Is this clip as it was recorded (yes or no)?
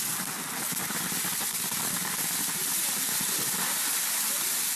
no